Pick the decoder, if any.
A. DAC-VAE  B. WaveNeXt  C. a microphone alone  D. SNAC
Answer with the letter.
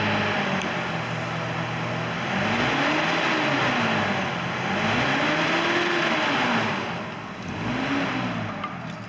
C